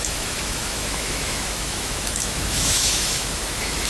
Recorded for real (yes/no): no